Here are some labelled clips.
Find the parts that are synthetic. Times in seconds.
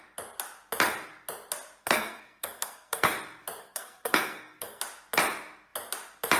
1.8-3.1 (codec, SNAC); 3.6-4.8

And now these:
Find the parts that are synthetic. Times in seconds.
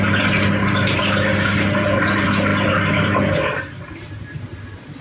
none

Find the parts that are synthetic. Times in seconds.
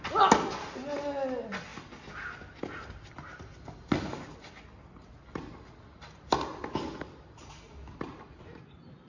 none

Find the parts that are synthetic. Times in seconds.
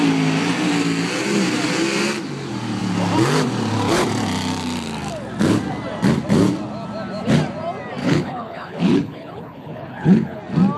8.0-10.4 (codec, HILCodec)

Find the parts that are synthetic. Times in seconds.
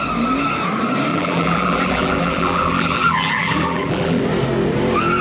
1.1-4.2 (vocoder, BigVGAN v2)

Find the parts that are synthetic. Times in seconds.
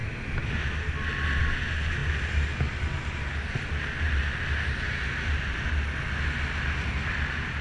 none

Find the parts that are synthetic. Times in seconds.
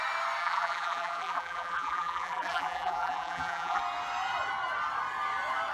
0.4-3.8 (vocoder, BigVGAN v2)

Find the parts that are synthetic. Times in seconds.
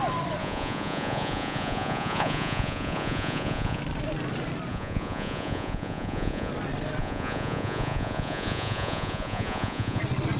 0.4-3.8 (vocoder, Vocos); 4.7-6.5; 7.0-10.0